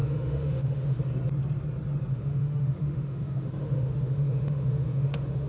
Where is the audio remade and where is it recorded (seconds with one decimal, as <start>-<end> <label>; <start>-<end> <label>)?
0.0-1.0 remade; 1.0-2.1 recorded; 2.1-5.5 remade